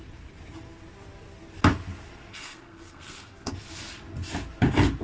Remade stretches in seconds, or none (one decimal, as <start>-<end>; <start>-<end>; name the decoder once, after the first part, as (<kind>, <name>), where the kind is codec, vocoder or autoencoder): 2.3-3.5 (codec, SNAC)